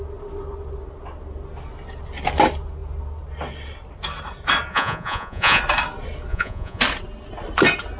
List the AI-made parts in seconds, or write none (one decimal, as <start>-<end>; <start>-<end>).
4.7-5.6; 6.3-6.8